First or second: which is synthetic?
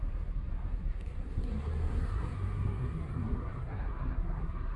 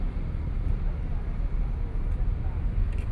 first